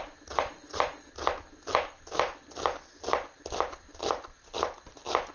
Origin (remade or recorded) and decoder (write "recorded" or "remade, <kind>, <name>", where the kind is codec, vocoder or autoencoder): recorded